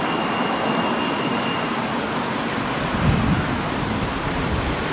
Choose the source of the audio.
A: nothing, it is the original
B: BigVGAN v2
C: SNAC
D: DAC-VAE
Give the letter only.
A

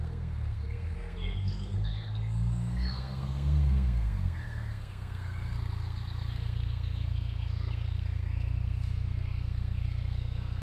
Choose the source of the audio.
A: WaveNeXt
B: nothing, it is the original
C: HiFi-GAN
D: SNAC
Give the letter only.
D